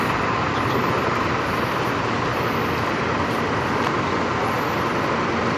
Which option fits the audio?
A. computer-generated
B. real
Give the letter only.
B